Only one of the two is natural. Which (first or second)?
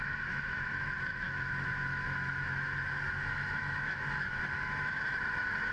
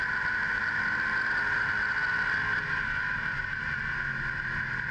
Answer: second